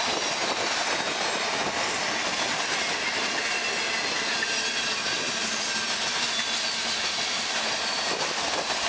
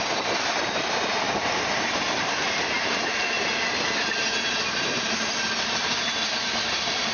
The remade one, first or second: second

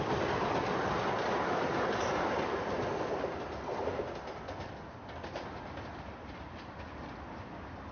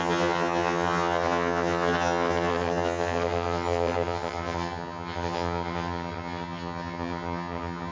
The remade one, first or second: second